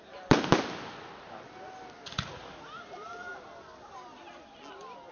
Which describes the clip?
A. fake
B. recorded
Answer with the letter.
B